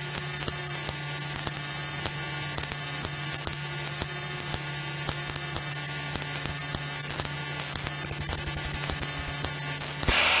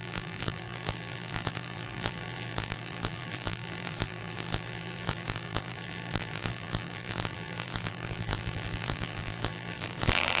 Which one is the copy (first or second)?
second